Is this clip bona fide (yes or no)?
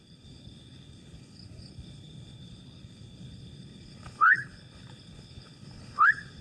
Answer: no